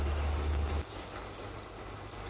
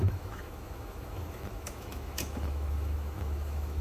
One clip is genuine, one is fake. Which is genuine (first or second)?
first